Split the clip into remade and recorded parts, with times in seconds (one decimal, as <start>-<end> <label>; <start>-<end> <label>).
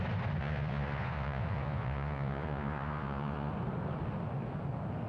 0.0-0.4 recorded; 0.4-3.5 remade; 3.5-5.1 recorded